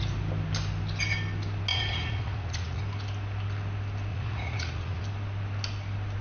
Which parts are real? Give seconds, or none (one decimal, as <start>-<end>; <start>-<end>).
0.0-1.7; 2.8-4.1; 5.0-6.2